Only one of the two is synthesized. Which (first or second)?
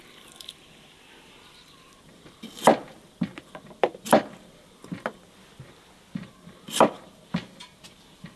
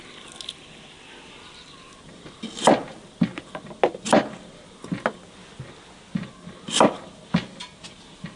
first